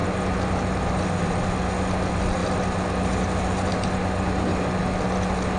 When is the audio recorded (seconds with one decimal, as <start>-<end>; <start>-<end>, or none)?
1.6-2.4; 3.7-5.6